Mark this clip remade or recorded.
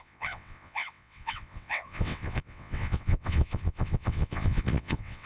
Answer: remade